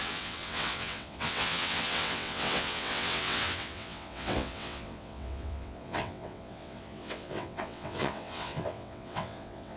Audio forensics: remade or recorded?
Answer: remade